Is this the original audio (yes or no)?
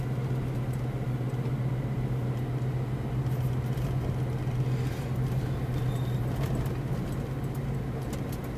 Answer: yes